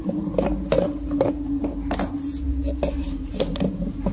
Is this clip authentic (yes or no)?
yes